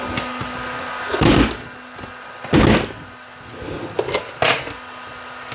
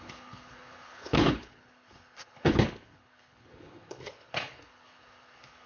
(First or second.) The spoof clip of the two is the second